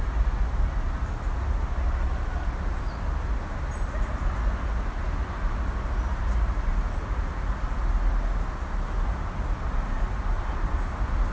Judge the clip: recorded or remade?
recorded